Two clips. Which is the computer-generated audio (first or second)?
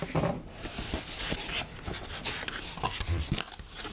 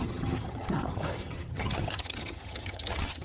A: second